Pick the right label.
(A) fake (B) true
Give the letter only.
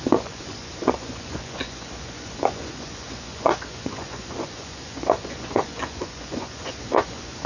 A